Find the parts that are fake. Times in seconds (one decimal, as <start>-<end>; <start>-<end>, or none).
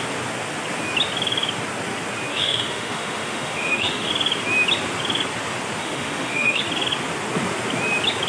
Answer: 2.3-4.1; 5.8-6.6